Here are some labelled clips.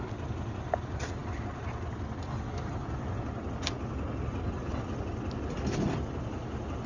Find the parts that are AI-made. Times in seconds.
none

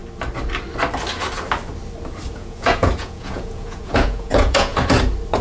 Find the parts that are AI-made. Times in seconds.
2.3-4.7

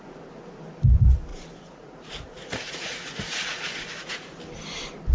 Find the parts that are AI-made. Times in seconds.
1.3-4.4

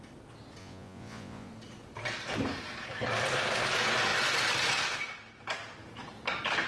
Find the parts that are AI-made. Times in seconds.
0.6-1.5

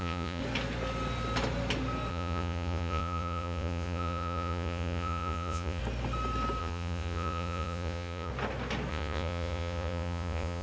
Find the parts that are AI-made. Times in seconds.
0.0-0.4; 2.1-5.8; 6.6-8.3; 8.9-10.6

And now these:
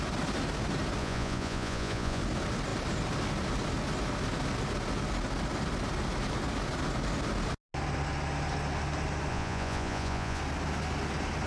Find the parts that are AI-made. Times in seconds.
1.0-2.2; 9.3-10.4